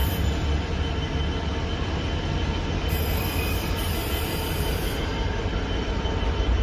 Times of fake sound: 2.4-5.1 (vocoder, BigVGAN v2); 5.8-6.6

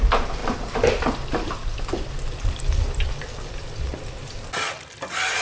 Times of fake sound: 0.0-5.4 (vocoder, BigVGAN v2)

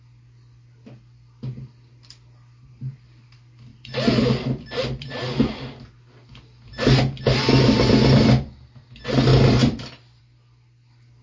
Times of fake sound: 3.7-5.8 (vocoder, BigVGAN v2); 9.3-10.2

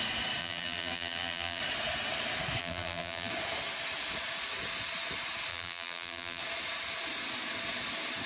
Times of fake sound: 0.4-1.6 (vocoder, BigVGAN v2); 2.6-3.3; 5.5-6.4

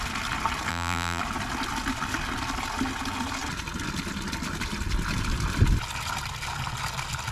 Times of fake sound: 0.7-1.2 (vocoder, BigVGAN v2)

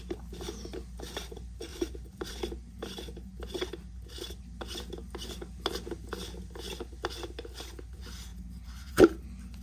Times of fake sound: 1.7-2.3 (vocoder, BigVGAN v2); 8.3-8.9

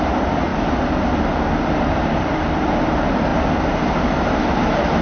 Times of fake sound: 0.0-0.5 (vocoder, BigVGAN v2); 2.0-5.0

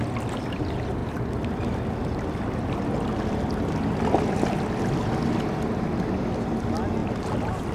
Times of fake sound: none